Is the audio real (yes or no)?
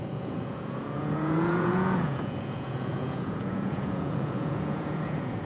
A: no